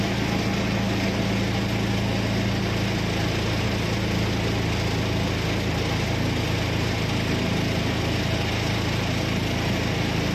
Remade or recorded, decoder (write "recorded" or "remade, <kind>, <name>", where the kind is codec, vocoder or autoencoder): recorded